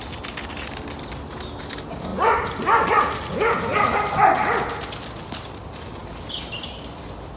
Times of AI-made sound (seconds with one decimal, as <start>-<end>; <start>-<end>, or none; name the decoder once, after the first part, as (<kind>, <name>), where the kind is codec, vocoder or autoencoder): none